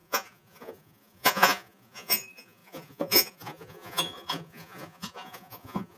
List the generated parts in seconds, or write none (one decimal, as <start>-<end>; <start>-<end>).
0.0-6.0